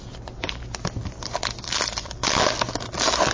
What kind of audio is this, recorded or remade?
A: recorded